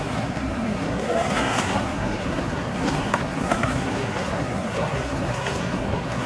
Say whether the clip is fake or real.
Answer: fake